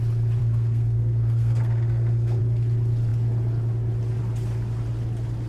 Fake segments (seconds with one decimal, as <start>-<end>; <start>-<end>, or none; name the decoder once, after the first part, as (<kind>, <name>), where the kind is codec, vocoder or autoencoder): 0.4-2.4 (codec, SNAC)